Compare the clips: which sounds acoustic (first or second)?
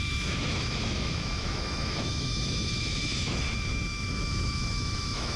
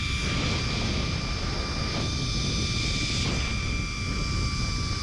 second